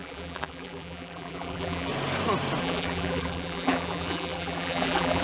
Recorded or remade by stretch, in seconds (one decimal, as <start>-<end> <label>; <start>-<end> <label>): 0.0-1.9 remade; 1.9-2.6 recorded; 2.6-5.2 remade